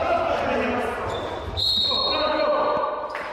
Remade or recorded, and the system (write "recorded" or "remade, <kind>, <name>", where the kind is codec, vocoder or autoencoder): remade, vocoder, BigVGAN v2